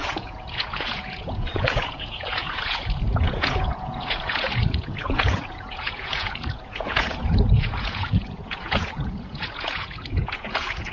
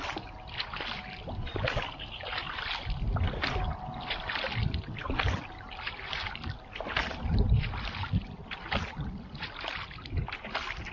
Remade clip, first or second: first